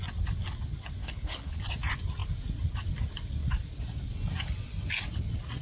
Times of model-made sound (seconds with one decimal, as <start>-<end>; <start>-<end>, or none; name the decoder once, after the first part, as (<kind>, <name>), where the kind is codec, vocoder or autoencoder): 1.0-1.6 (codec, HILCodec)